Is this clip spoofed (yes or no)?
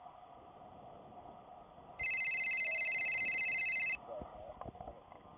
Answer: no